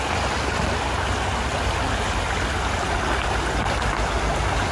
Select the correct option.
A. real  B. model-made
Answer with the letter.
A